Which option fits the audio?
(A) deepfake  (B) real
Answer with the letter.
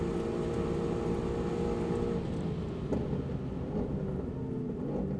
B